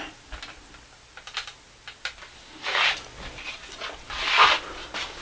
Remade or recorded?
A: recorded